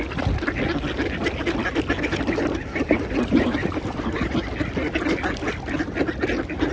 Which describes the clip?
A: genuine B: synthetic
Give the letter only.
A